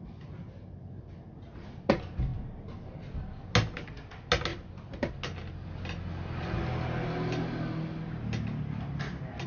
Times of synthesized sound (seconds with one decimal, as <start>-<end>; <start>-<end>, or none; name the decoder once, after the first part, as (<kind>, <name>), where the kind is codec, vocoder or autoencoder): none